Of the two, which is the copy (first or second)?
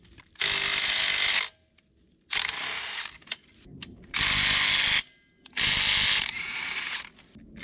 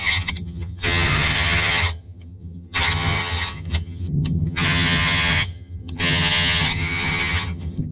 second